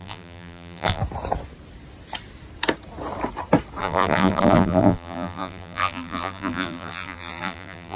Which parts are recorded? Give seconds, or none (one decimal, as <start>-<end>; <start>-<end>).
1.0-3.8